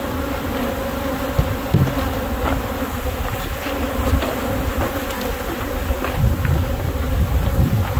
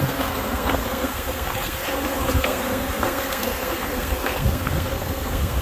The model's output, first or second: second